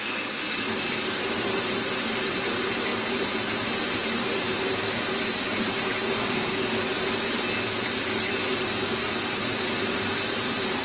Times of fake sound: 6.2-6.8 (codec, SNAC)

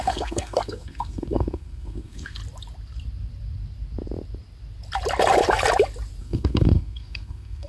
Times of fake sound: 0.0-2.4 (codec, SNAC); 6.2-7.7